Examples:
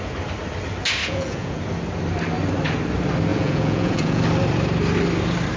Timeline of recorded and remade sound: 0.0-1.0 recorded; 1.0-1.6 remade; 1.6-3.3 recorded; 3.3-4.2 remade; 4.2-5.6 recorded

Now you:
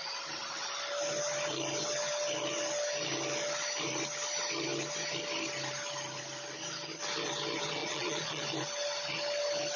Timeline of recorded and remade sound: 0.0-7.8 recorded; 7.8-8.4 remade; 8.4-9.8 recorded